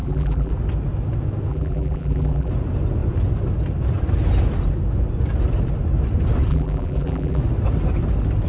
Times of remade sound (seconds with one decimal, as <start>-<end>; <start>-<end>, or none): 0.0-0.5; 1.5-2.5; 6.5-7.4

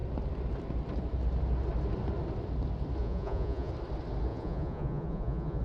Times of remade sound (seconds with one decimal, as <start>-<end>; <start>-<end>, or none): 3.0-3.7; 4.3-5.6

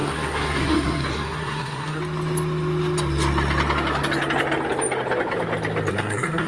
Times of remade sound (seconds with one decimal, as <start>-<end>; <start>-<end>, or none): 0.0-2.0; 5.9-6.5